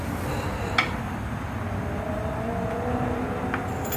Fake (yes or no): no